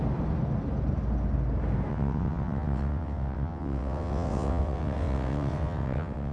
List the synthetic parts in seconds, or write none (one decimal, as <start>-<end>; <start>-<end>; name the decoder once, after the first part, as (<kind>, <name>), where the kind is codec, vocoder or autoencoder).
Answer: 1.9-6.3 (vocoder, WaveNeXt)